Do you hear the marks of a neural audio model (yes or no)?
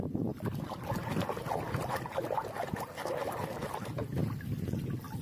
no